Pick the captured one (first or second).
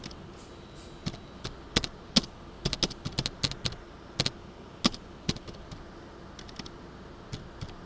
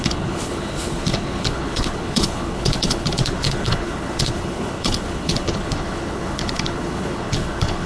first